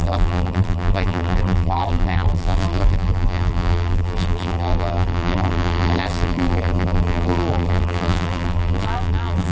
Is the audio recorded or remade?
remade